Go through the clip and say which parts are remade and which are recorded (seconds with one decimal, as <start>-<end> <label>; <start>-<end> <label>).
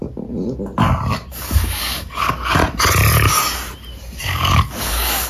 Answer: 0.0-1.3 recorded; 1.3-2.6 remade; 2.6-4.2 recorded; 4.2-5.3 remade